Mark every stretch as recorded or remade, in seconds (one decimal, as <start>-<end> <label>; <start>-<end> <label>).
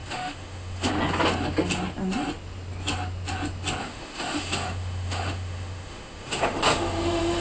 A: 0.0-0.9 remade; 0.9-3.8 recorded; 3.8-7.4 remade